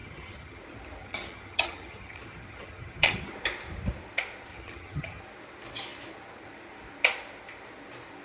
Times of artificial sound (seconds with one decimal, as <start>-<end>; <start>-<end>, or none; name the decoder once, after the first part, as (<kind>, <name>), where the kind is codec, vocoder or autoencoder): 0.0-0.6 (vocoder, HiFi-GAN); 1.0-3.3; 4.5-5.2

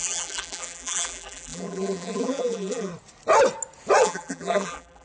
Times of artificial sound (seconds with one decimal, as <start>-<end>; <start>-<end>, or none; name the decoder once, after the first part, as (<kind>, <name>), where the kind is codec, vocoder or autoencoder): 0.0-2.9 (vocoder, BigVGAN v2); 4.0-5.0

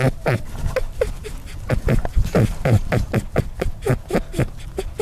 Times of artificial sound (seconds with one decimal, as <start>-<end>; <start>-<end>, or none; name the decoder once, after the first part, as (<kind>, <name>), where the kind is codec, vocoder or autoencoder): none

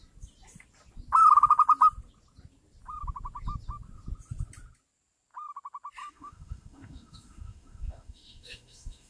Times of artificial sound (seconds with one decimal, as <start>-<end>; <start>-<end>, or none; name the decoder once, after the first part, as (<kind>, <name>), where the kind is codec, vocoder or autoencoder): 6.0-9.1 (autoencoder, DAC-VAE)

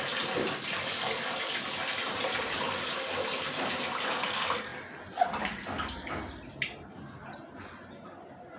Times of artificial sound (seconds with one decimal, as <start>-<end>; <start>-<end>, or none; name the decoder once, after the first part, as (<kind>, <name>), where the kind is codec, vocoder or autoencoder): none

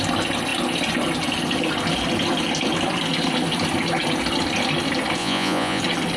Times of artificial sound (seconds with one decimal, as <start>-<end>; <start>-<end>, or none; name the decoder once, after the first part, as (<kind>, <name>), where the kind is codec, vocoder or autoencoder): 5.2-5.8 (vocoder, Vocos)

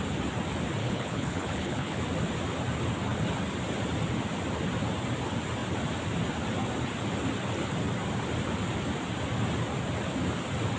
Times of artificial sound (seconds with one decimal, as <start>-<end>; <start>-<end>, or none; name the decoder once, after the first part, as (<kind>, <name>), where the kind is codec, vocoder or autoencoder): 0.8-2.0 (codec, HILCodec)

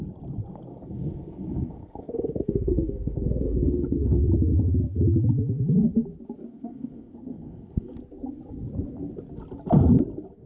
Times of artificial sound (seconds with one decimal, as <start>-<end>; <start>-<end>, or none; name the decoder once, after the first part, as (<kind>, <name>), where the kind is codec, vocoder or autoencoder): 0.7-4.3 (codec, SNAC); 6.5-8.0